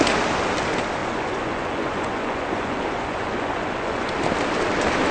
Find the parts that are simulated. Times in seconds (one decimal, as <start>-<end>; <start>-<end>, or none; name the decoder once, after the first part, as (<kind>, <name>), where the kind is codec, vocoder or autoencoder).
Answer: 1.0-4.1 (vocoder, Vocos)